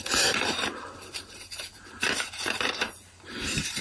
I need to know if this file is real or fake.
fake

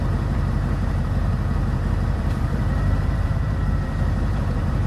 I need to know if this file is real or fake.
fake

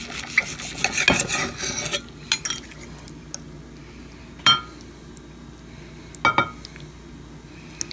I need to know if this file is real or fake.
real